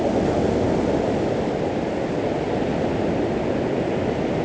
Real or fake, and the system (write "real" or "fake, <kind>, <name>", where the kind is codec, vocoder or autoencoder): real